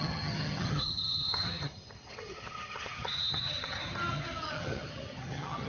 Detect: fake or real fake